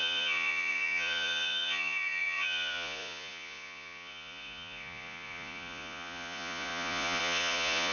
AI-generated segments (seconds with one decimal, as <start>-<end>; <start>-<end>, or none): 0.0-7.9